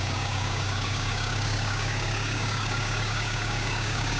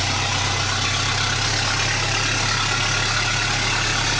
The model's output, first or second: first